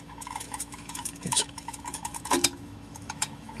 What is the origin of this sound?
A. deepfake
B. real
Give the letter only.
A